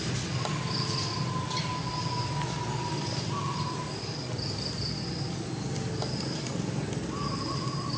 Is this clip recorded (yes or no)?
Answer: yes